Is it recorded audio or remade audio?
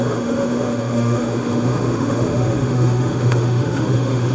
remade